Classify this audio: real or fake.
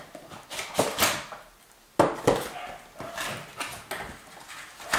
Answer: real